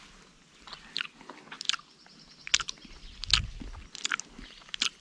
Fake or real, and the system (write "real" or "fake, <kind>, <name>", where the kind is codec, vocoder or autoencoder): real